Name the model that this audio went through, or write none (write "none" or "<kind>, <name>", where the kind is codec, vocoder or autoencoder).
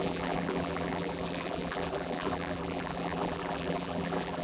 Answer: vocoder, BigVGAN v2